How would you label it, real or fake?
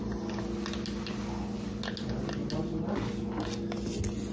real